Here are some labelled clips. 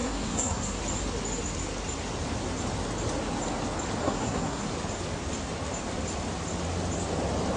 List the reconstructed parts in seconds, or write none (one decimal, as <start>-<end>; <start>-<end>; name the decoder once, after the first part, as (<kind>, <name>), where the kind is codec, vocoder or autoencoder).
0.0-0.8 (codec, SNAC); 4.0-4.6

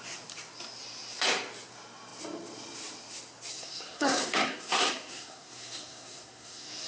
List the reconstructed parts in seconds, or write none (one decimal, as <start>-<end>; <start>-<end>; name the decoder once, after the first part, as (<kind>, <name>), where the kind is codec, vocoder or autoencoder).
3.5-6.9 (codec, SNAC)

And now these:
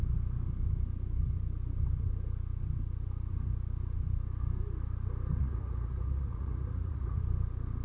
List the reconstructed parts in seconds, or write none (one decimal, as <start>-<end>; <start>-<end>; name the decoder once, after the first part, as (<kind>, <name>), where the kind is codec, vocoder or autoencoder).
5.4-7.2 (vocoder, Vocos)

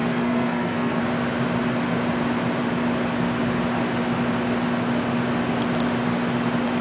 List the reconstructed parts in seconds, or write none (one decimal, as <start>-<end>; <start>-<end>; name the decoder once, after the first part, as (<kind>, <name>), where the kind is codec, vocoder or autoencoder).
0.0-1.0 (codec, SNAC)

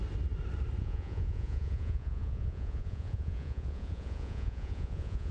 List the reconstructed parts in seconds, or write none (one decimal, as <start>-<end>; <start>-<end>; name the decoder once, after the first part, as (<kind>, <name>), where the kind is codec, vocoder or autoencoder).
0.8-5.3 (vocoder, Vocos)